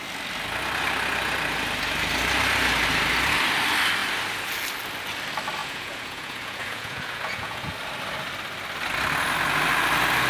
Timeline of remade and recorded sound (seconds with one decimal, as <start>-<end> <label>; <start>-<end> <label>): 0.0-5.6 recorded; 5.6-7.7 remade; 7.7-10.3 recorded